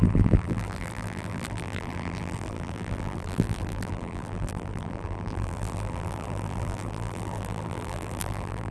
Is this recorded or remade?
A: remade